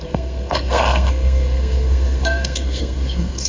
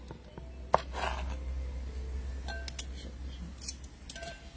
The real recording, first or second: second